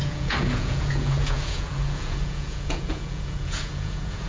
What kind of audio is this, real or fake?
fake